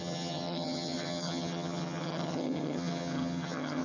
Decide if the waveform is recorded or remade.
remade